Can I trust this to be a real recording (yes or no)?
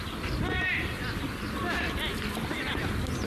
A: no